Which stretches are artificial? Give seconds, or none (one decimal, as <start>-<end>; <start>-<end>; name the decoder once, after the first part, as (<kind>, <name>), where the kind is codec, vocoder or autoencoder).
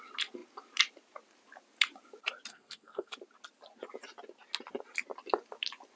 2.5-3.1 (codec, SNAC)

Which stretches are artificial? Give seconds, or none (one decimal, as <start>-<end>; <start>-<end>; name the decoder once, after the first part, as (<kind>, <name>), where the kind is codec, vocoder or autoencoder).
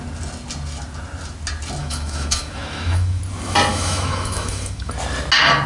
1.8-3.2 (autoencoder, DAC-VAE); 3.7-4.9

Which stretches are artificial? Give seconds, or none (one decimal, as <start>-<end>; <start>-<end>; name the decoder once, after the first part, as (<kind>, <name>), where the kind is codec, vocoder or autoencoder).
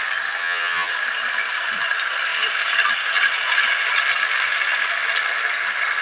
0.4-0.9 (vocoder, HiFi-GAN)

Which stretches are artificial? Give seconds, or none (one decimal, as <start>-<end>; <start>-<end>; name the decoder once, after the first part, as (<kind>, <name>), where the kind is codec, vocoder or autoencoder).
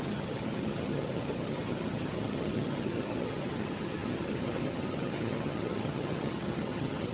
0.0-7.1 (vocoder, HiFi-GAN)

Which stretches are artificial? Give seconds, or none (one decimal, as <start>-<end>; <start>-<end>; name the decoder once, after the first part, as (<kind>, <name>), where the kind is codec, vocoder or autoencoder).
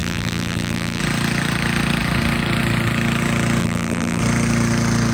0.0-1.0 (vocoder, BigVGAN v2); 3.6-4.2